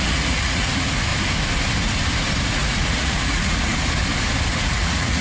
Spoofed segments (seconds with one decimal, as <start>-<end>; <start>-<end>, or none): 0.0-1.1; 2.4-3.7; 4.5-5.2

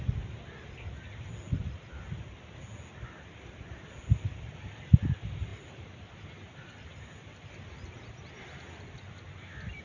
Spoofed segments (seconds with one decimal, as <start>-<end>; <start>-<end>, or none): none

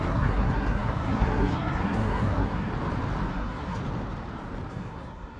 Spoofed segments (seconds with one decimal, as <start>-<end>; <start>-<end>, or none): 0.0-2.7; 3.3-3.8; 4.7-5.4

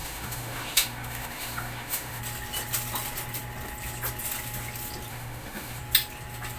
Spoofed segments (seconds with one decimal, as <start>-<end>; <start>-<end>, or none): 0.0-2.2; 5.1-5.8

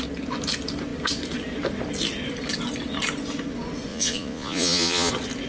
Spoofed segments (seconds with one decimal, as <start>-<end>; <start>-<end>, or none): 3.9-5.1

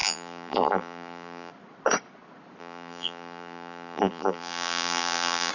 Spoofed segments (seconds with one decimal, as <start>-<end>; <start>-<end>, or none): 0.0-1.5; 2.6-5.5